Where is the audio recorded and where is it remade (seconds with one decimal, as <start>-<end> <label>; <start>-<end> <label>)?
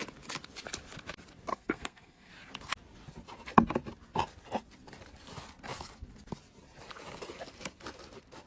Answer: 0.0-1.5 recorded; 1.5-2.3 remade; 2.3-8.5 recorded